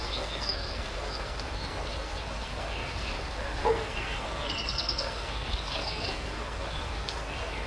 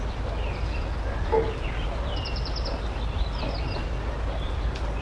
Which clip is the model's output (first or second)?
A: first